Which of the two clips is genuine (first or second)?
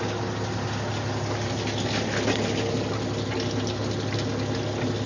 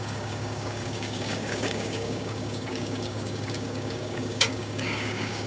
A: first